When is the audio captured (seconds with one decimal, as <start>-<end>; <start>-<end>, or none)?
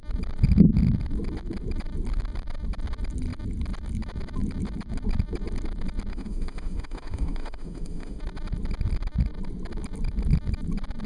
0.0-6.1; 8.2-11.1